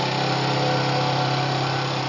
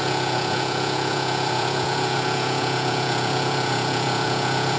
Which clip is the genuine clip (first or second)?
first